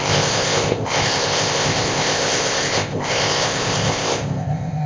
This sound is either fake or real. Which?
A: fake